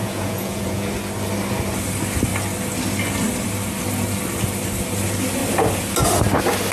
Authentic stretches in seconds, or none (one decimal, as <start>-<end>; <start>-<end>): 0.9-6.7

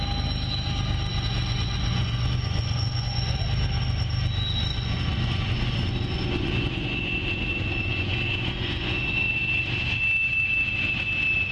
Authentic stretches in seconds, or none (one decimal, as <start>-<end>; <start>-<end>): 0.0-1.1; 3.4-4.7; 9.3-11.5